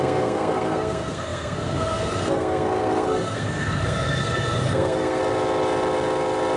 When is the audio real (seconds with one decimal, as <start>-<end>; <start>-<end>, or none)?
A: 5.2-6.6